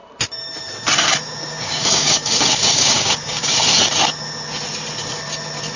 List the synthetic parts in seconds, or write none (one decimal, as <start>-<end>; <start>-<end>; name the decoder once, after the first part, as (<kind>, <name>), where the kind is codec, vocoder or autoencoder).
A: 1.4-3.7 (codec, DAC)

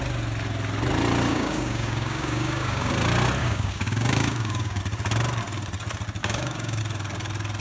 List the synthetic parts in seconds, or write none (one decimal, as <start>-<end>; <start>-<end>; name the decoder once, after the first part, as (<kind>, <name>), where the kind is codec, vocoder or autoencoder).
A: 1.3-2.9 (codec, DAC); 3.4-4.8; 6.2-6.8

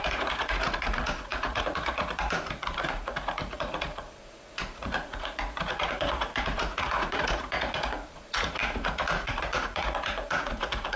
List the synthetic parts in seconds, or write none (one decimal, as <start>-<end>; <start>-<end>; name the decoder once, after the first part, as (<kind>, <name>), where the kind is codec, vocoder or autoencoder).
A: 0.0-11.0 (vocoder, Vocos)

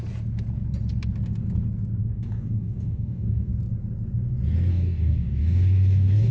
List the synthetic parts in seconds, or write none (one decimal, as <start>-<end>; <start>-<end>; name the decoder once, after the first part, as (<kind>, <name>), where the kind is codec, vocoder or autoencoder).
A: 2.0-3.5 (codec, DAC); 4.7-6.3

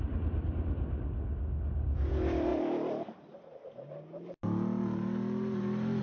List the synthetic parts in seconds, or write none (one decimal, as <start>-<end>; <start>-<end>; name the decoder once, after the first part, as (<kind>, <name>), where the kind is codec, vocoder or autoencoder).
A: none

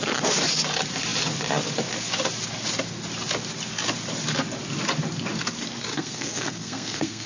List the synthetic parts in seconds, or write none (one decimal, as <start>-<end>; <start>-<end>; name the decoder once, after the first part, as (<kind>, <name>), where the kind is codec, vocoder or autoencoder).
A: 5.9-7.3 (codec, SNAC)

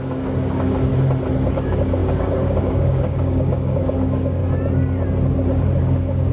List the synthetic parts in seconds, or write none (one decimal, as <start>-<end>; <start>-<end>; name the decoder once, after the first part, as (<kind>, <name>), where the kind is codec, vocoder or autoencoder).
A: 0.0-0.9 (codec, DAC); 1.5-4.4; 5.8-6.3

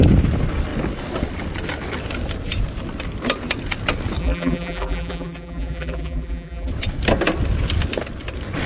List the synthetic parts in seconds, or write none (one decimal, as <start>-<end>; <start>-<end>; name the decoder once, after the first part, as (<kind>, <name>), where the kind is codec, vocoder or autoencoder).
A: 4.2-6.7 (vocoder, BigVGAN v2)